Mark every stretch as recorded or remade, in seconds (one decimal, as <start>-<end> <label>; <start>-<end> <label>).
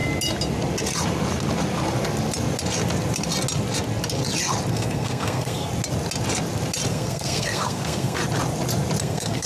0.0-4.7 recorded; 4.7-5.7 remade; 5.7-6.9 recorded; 6.9-8.2 remade; 8.2-9.0 recorded; 9.0-9.5 remade